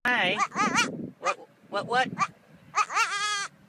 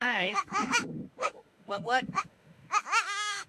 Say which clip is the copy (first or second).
second